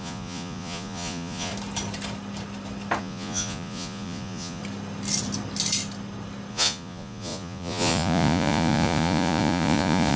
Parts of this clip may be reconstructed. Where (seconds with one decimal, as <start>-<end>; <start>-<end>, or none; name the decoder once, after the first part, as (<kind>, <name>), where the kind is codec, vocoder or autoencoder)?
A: 0.0-1.5 (vocoder, Vocos); 3.0-4.6; 6.5-10.2